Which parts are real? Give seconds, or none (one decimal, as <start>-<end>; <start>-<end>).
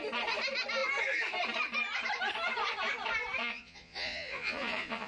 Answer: 0.0-3.4